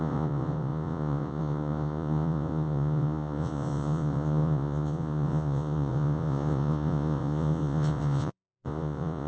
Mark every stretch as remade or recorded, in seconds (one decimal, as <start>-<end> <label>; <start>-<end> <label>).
0.0-9.3 remade